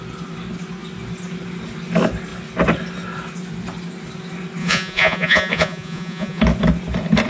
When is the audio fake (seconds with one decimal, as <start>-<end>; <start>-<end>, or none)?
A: 4.6-6.4